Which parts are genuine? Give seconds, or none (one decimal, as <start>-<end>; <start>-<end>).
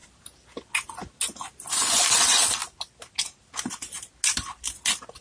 0.0-2.1; 2.6-5.2